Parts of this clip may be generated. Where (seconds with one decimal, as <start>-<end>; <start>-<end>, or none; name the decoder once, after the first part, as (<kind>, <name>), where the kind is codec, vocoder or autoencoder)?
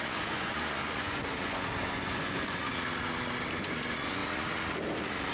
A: 0.0-2.7 (vocoder, Vocos); 3.6-4.2